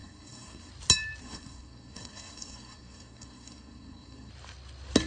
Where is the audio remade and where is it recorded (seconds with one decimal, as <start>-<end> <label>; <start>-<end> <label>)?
0.0-0.7 remade; 0.7-1.2 recorded; 1.2-4.3 remade; 4.3-5.1 recorded